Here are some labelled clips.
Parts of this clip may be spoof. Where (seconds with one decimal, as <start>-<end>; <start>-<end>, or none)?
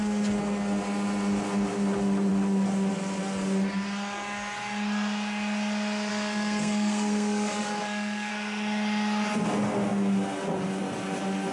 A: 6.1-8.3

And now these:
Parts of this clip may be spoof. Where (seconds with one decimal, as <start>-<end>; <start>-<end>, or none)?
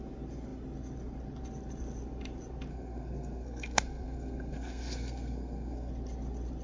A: 2.7-5.9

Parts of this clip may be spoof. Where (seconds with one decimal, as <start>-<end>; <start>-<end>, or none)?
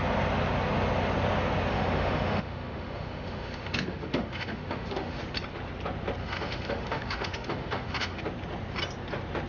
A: 1.7-5.2; 6.2-8.2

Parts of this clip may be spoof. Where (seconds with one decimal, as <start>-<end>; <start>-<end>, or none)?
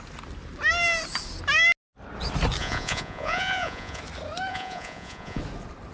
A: 2.6-4.0; 4.5-5.4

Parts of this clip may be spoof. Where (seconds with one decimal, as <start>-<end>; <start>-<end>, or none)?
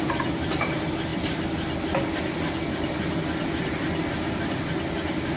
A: none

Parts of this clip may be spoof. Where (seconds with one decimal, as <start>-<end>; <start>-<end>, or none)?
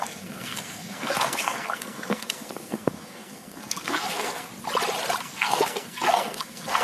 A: 0.0-4.5; 5.2-6.8